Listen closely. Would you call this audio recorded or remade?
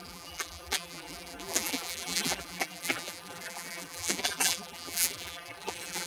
remade